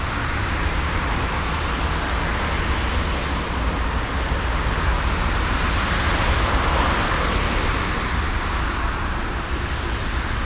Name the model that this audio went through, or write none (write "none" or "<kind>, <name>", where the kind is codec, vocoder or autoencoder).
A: none